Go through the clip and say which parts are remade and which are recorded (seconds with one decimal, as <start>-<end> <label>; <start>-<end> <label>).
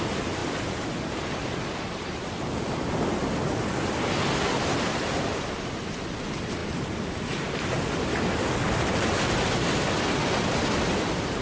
0.0-11.4 recorded